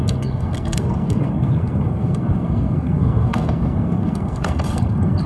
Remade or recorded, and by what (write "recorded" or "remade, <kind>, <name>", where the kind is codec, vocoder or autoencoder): remade, codec, SNAC